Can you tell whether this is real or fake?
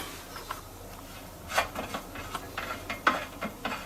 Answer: real